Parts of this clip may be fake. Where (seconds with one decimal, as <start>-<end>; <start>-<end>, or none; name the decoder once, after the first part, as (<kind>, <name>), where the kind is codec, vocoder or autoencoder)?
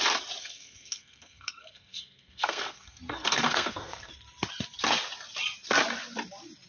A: 0.4-4.1 (codec, SNAC)